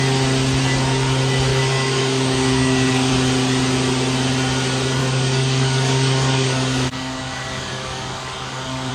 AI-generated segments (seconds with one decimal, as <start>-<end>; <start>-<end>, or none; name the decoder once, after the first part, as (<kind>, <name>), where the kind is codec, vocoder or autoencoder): 1.5-3.1 (codec, DAC); 5.0-8.9